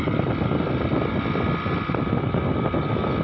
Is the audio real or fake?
real